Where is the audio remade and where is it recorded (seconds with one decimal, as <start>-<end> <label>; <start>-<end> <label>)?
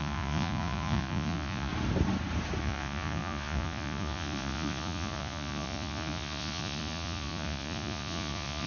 0.0-1.7 remade; 1.7-2.6 recorded; 2.6-8.7 remade